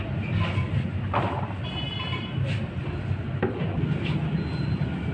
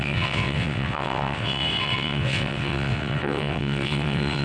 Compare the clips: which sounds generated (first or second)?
second